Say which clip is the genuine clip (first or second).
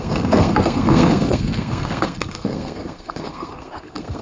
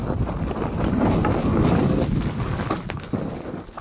second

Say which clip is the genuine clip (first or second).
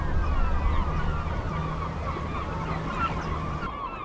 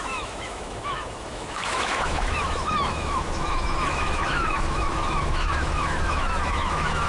first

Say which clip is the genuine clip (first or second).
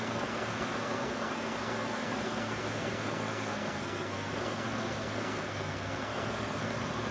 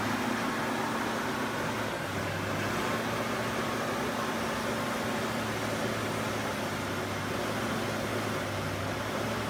second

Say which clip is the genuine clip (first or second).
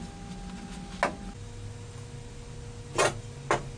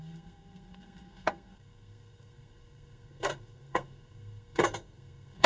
first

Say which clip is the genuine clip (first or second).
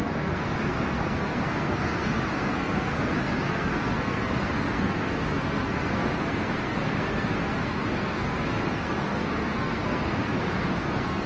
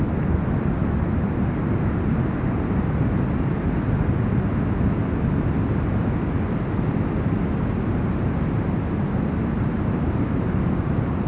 second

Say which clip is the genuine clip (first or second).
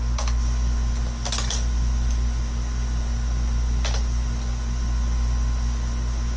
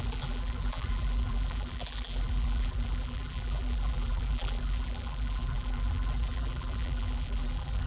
first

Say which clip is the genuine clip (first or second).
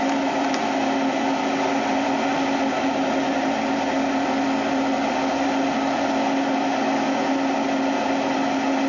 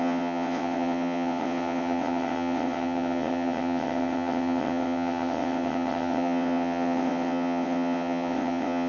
first